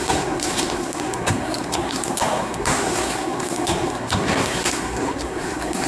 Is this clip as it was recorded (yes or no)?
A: no